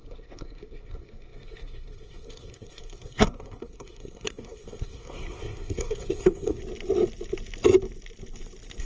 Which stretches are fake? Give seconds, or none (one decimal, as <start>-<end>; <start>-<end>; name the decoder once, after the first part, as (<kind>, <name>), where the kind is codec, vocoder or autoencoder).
0.0-6.6 (codec, SNAC)